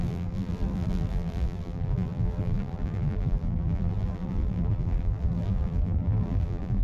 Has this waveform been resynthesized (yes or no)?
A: yes